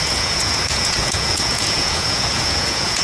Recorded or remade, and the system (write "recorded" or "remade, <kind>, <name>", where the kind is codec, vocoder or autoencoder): remade, vocoder, Vocos